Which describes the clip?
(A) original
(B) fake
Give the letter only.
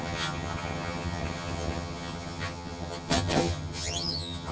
B